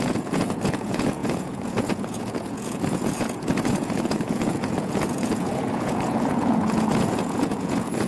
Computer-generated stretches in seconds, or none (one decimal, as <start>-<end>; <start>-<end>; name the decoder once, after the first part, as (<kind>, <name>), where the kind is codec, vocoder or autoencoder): 0.0-8.1 (vocoder, Vocos)

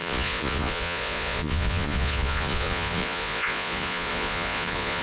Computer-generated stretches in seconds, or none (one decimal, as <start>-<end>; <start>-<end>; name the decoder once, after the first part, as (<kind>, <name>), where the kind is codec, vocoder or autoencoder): 0.0-5.0 (vocoder, Vocos)

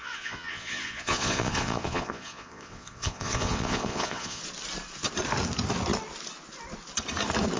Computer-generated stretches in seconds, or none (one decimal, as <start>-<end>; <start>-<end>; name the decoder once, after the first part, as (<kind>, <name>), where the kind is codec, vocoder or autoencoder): 0.0-4.4 (vocoder, Vocos)